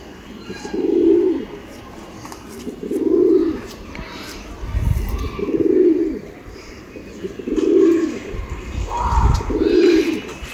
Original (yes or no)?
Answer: no